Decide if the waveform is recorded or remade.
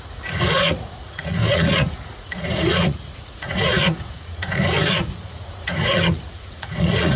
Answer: remade